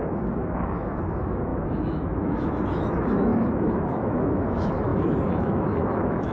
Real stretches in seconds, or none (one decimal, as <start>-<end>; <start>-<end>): none